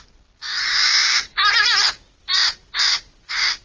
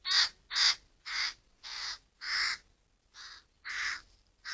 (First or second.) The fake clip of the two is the first